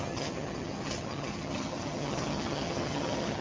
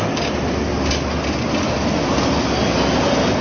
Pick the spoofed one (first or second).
first